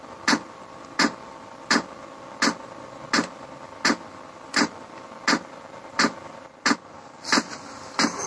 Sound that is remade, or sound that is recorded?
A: recorded